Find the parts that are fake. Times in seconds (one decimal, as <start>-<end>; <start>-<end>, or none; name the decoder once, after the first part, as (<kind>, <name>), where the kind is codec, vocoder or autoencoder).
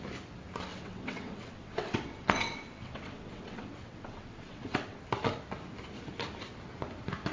0.7-5.0 (vocoder, WaveNeXt)